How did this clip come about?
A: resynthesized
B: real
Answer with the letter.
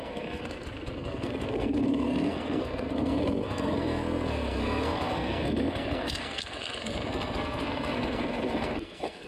A